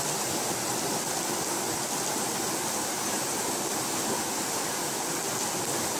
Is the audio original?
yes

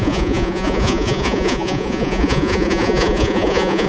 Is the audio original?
no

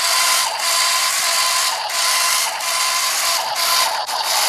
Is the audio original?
yes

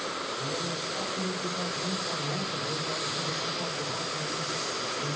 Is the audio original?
yes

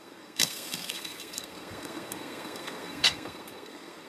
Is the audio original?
no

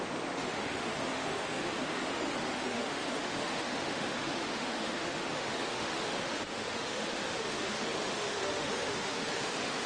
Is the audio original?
no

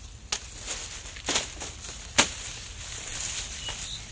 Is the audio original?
yes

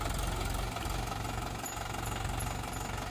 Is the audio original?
yes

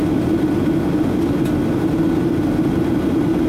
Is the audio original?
yes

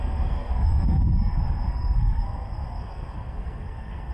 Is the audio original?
no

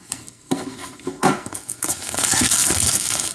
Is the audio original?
no